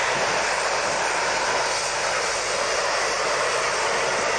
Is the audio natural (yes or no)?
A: yes